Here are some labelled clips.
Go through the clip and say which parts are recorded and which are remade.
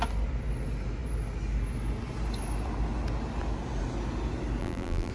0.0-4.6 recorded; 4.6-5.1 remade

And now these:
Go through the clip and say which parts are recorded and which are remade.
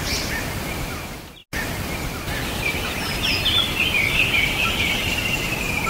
0.0-5.9 recorded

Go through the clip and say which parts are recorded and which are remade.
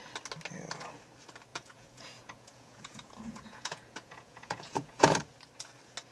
0.0-1.5 recorded; 1.5-5.2 remade; 5.2-6.1 recorded